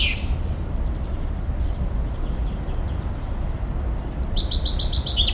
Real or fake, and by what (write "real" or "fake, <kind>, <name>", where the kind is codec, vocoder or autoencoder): real